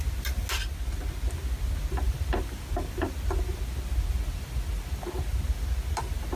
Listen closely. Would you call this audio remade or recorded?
recorded